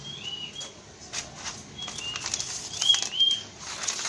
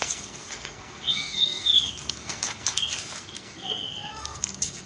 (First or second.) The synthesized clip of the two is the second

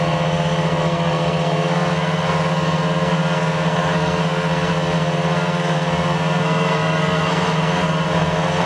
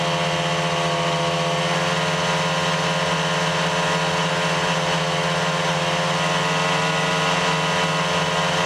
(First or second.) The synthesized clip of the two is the first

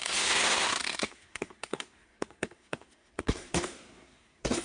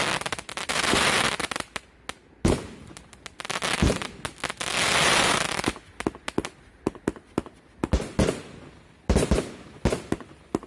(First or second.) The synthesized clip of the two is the first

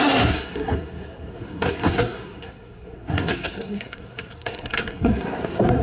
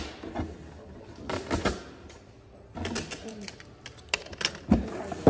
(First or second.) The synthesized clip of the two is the first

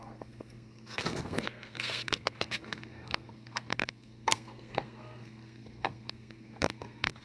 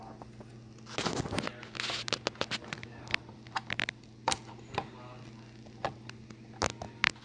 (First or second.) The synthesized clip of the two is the first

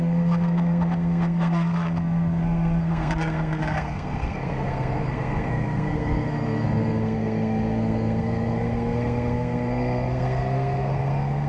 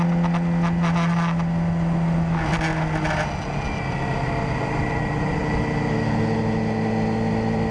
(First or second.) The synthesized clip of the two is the first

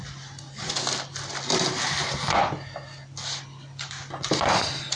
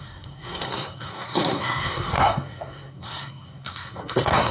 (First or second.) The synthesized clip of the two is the second